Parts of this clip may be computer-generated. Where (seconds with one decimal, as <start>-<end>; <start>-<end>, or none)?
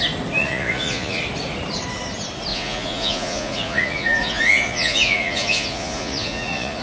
0.4-1.2; 2.5-6.8